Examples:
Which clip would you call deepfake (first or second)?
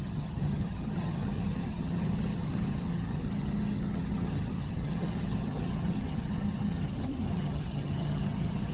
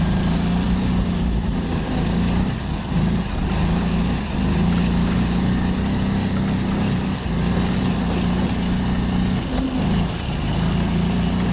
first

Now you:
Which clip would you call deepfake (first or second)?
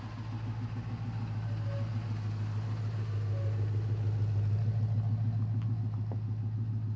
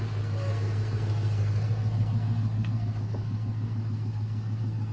second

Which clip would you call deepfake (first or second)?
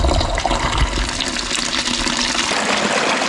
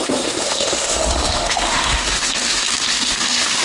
second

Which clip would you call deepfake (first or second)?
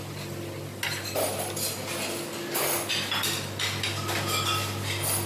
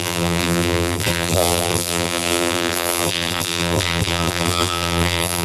second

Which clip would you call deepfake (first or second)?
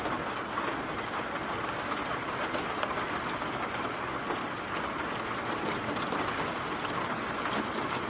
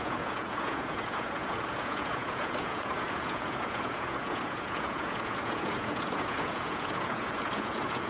second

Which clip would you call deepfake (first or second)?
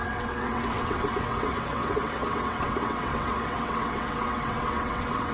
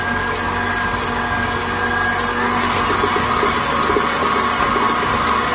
first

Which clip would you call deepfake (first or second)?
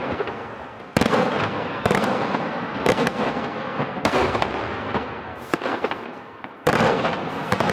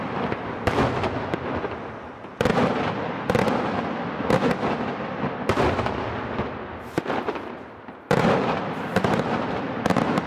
first